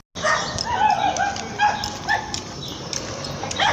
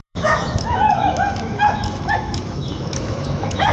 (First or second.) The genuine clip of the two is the first